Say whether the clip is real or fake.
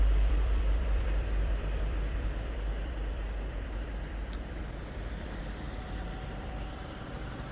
fake